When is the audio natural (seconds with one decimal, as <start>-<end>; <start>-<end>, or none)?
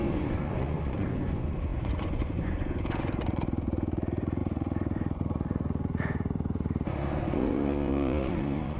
none